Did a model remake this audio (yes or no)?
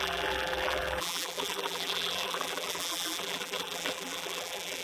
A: yes